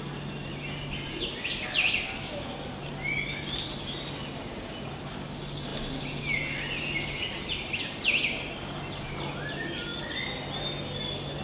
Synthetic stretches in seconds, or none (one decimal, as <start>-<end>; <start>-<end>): none